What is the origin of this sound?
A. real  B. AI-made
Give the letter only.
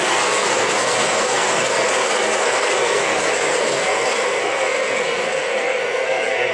B